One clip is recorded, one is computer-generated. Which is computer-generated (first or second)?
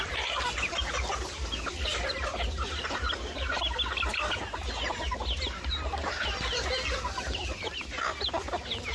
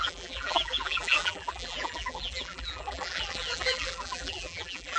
second